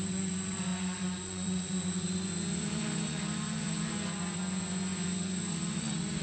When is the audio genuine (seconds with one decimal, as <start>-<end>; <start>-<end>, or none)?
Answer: none